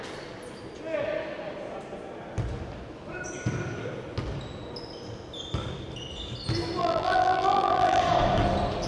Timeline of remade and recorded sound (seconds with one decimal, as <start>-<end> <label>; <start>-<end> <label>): 0.0-6.8 recorded; 6.8-8.0 remade; 8.0-8.9 recorded